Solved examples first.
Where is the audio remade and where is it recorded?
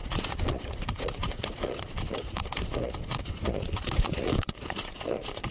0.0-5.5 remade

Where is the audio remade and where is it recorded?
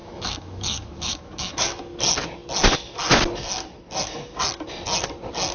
0.0-1.8 remade; 1.8-5.5 recorded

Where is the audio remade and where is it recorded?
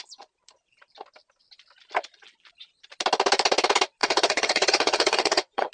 0.0-4.0 recorded; 4.0-5.7 remade